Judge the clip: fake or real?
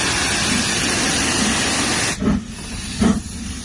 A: real